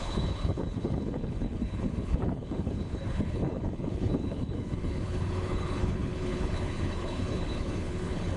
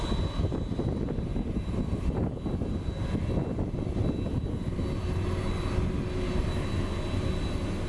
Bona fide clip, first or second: second